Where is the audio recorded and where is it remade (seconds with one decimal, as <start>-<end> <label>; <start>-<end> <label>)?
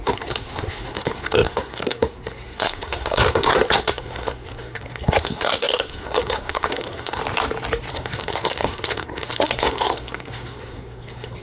0.0-7.2 remade; 7.2-7.9 recorded; 7.9-11.4 remade